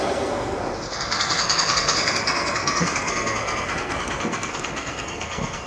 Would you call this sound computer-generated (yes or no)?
yes